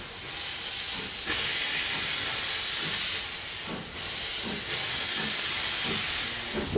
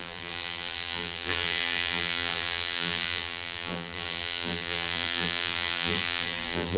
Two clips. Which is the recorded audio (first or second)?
first